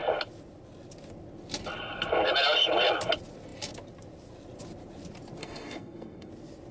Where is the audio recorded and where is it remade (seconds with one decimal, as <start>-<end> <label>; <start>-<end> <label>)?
0.0-5.4 recorded; 5.4-6.3 remade; 6.3-6.7 recorded